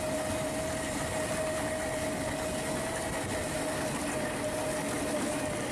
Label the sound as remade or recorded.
recorded